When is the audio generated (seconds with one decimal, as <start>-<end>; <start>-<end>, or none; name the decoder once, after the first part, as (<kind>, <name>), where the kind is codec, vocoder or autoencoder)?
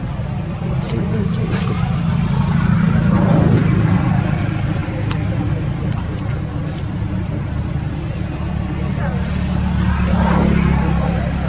none